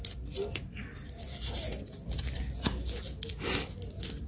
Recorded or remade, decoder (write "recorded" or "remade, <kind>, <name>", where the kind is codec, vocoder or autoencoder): recorded